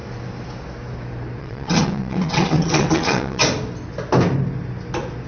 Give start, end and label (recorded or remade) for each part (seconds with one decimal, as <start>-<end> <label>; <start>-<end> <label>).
0.0-1.4 recorded; 1.4-3.4 remade; 3.4-5.3 recorded